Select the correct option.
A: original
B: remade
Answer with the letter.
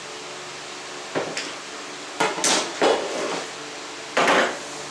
A